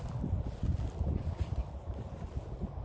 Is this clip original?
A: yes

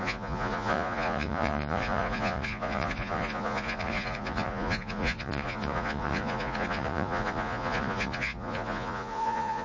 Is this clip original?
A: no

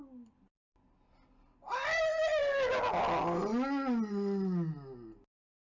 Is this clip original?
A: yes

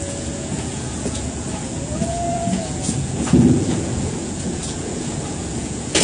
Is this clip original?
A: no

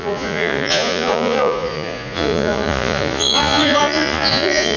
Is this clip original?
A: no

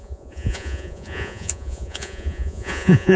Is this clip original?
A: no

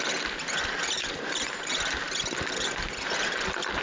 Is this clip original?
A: yes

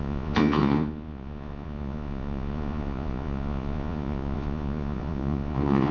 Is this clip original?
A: no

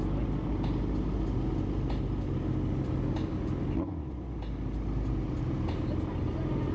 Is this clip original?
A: yes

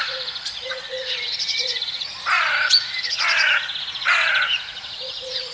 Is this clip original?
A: no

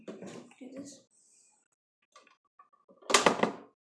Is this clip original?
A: yes